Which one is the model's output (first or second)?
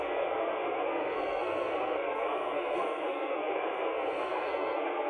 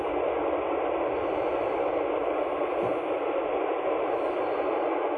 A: first